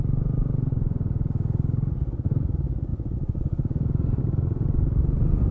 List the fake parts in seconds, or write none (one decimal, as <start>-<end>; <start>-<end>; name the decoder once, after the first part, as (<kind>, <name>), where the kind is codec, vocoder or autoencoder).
0.7-1.3 (vocoder, Vocos); 2.9-4.2